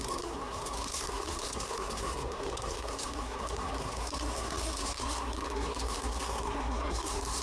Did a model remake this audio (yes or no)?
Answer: yes